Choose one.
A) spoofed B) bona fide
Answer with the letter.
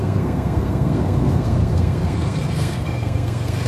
A